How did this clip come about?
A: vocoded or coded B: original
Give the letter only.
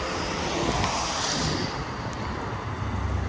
B